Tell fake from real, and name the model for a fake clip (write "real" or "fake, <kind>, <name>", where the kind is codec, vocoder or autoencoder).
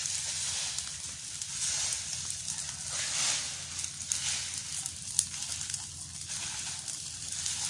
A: real